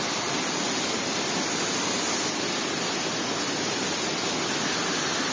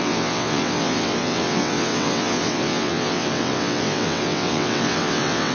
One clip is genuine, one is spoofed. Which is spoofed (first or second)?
second